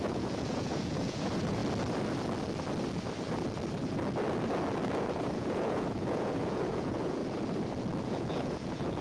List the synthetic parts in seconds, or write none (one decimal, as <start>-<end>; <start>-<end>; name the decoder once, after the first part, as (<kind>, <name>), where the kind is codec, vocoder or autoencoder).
0.0-1.6 (vocoder, Vocos); 5.0-7.2; 8.0-9.0